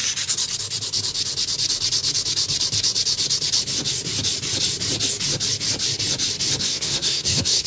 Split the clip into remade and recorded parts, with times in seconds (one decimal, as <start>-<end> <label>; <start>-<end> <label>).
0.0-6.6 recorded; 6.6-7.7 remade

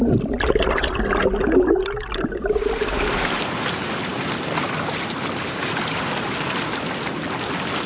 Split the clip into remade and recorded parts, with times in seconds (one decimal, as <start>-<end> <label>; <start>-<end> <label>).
0.0-7.9 recorded

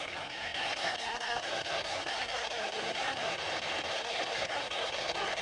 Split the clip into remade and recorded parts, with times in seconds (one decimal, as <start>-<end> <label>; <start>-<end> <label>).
0.0-3.4 remade; 3.4-3.9 recorded; 3.9-5.4 remade

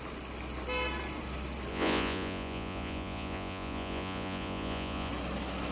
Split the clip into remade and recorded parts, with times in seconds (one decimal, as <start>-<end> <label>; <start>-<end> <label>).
0.0-1.7 recorded; 1.7-5.1 remade; 5.1-5.7 recorded